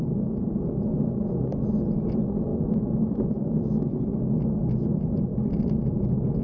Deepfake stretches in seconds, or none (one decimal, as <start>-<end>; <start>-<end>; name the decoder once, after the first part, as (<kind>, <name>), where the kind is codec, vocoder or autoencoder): 2.5-4.2 (autoencoder, DAC-VAE)